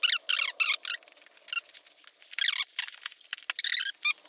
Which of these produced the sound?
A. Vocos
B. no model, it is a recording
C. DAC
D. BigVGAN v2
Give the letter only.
B